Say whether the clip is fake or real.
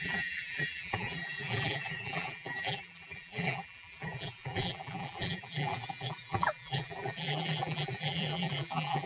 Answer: fake